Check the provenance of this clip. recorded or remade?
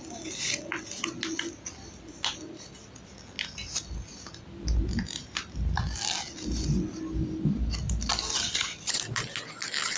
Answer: recorded